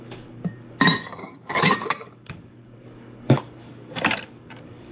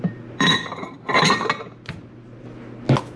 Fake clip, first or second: first